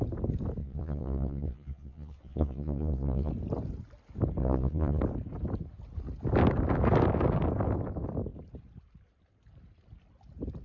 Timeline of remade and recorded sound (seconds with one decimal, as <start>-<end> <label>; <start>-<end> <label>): 0.0-0.6 recorded; 0.6-3.3 remade; 3.3-4.4 recorded; 4.4-5.0 remade; 5.0-10.6 recorded